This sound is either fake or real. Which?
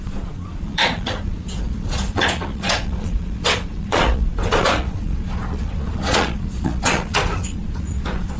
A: fake